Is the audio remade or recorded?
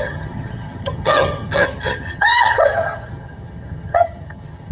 remade